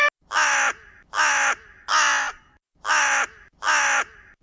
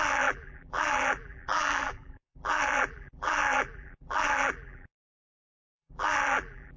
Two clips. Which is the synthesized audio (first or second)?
second